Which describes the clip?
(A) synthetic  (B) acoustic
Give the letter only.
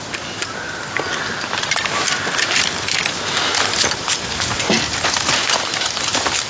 B